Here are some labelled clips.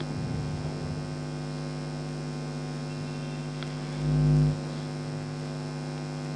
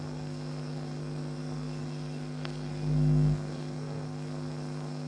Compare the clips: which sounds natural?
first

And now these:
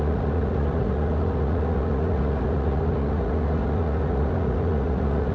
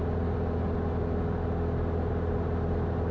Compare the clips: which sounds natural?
second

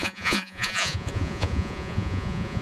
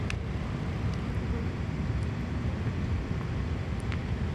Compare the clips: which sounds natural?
second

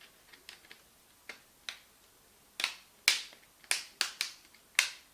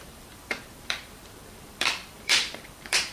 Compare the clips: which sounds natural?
first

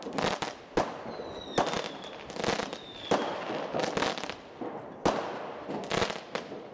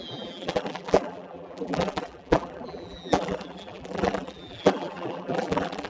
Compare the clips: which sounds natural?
first